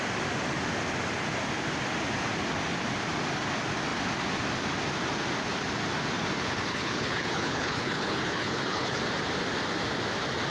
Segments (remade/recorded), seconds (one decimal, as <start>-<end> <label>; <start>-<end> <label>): 0.0-6.7 recorded; 6.7-9.0 remade; 9.0-10.5 recorded